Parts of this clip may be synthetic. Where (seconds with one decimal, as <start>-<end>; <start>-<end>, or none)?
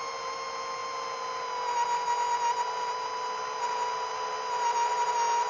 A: none